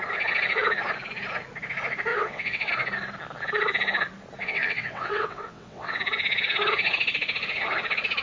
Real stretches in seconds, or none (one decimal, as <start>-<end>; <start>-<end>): 0.0-2.1; 2.7-4.4; 6.0-8.2